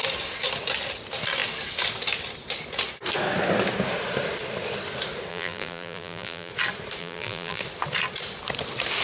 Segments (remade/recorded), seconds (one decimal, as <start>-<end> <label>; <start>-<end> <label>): 0.0-5.3 recorded; 5.3-6.5 remade; 6.5-7.0 recorded; 7.0-7.6 remade; 7.6-9.0 recorded